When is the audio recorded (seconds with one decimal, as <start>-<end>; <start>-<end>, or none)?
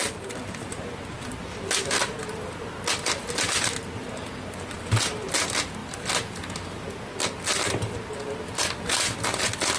0.7-9.8